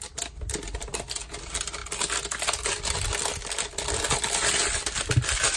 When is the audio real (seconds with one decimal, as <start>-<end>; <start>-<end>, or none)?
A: 0.0-5.6